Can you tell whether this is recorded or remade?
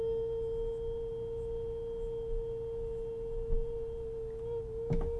recorded